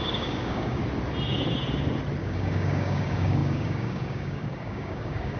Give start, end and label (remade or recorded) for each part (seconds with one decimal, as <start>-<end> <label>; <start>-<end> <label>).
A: 0.0-0.8 remade; 0.8-2.2 recorded; 2.2-5.4 remade